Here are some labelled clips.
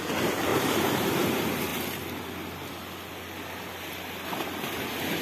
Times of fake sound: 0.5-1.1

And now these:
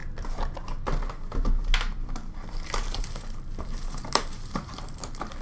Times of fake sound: 3.0-5.4